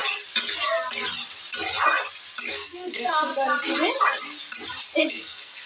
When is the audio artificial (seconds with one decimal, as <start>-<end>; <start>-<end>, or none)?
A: 2.5-3.3; 5.1-5.7